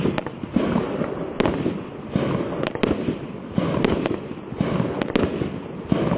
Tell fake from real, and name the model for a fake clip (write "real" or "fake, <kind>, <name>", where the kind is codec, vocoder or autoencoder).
real